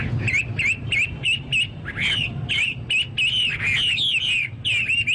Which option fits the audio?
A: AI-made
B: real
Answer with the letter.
B